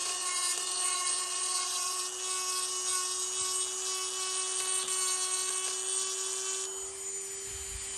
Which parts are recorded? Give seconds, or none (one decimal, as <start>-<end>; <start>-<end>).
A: 2.0-8.0